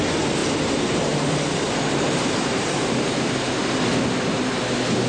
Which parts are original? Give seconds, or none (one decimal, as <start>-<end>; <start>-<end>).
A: 0.0-0.4; 3.5-5.1